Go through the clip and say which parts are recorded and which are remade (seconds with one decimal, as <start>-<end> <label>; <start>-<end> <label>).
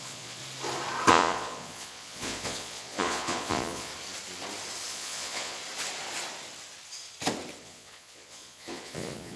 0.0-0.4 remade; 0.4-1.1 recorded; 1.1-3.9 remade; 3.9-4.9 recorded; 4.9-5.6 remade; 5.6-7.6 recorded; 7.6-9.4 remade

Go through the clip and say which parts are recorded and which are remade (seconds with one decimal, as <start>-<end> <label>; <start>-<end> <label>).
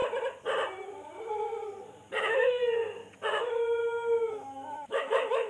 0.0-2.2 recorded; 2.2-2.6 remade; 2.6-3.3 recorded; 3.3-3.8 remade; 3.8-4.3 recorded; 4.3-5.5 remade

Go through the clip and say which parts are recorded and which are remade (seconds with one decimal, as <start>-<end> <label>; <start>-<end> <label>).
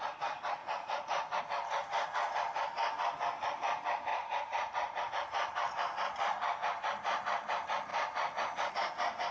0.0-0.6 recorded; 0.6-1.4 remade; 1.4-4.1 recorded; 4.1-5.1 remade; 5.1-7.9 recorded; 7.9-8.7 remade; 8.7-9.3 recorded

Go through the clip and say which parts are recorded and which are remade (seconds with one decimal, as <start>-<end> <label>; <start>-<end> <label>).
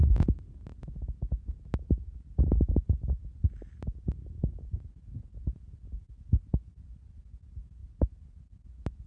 0.0-9.1 recorded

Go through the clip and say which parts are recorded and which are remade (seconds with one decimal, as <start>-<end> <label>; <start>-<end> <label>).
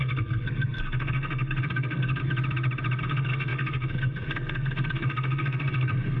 0.0-2.2 remade; 2.2-3.0 recorded; 3.0-6.2 remade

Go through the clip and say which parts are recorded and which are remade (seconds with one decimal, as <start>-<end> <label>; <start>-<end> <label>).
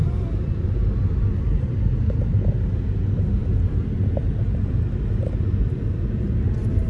0.0-6.9 recorded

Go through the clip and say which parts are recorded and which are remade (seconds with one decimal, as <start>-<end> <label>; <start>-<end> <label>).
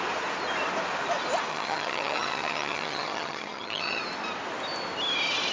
0.0-1.5 recorded; 1.5-4.0 remade; 4.0-5.5 recorded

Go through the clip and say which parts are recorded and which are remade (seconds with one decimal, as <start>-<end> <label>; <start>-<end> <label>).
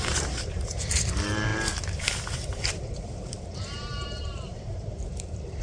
0.0-5.6 remade